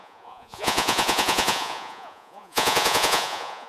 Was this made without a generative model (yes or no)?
no